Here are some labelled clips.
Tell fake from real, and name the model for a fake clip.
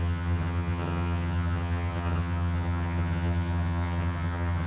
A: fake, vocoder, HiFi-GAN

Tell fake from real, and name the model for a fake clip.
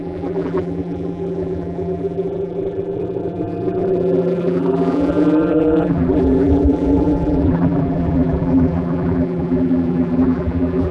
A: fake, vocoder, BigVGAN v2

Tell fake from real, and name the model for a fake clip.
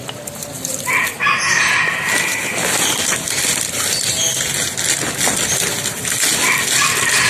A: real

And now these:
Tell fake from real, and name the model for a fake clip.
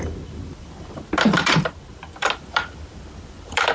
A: fake, vocoder, BigVGAN v2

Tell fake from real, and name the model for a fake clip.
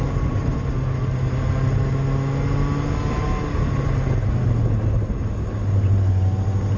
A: real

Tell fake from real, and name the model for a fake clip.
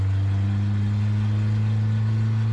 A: real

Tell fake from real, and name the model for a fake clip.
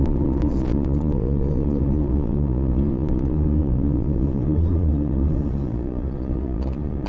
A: fake, vocoder, Vocos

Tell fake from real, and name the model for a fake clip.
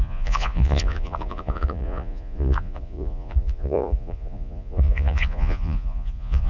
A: fake, vocoder, Vocos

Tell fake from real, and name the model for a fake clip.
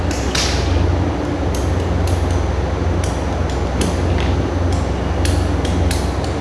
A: real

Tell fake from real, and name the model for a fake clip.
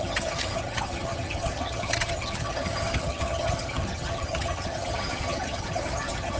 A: fake, vocoder, HiFi-GAN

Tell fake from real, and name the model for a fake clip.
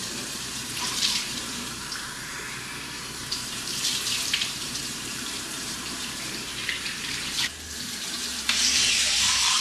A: fake, vocoder, BigVGAN v2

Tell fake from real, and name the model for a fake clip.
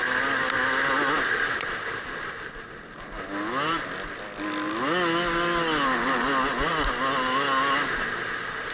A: real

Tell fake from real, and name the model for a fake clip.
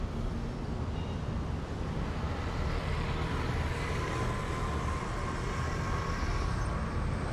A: real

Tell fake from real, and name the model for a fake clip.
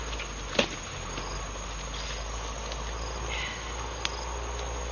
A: real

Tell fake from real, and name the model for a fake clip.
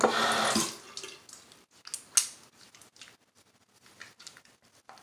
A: real